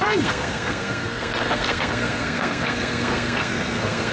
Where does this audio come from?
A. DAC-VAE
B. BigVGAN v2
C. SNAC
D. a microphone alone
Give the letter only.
C